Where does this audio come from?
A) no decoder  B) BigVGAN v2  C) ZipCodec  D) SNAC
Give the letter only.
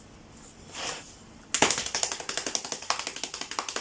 A